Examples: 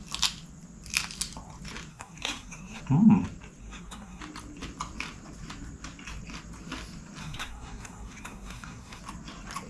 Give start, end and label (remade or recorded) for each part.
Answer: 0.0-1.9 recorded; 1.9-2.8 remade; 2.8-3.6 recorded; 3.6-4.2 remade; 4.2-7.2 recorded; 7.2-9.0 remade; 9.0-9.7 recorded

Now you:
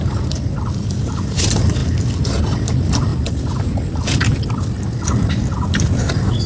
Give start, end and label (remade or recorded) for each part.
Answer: 0.0-3.1 remade; 3.1-6.5 recorded

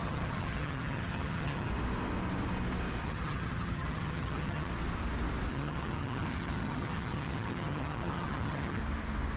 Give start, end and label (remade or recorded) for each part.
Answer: 0.0-1.7 remade; 1.7-3.0 recorded; 3.0-4.7 remade; 4.7-5.5 recorded; 5.5-8.8 remade; 8.8-9.4 recorded

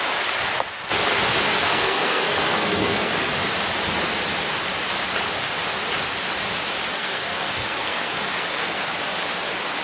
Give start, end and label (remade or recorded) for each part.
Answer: 0.0-1.5 recorded; 1.5-3.3 remade; 3.3-6.9 recorded; 6.9-8.9 remade; 8.9-9.8 recorded

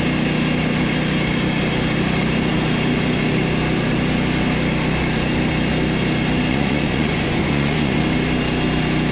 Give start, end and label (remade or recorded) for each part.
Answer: 0.0-6.5 recorded; 6.5-8.0 remade; 8.0-9.1 recorded

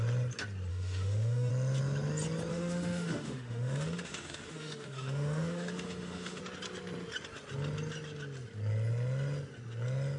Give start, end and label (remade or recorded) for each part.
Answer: 0.0-0.7 recorded; 0.7-1.5 remade; 1.5-2.5 recorded; 2.5-6.4 remade; 6.4-10.2 recorded

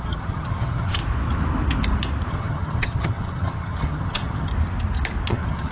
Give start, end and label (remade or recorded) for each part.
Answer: 0.0-1.0 remade; 1.0-2.3 recorded; 2.3-4.5 remade; 4.5-5.3 recorded; 5.3-5.7 remade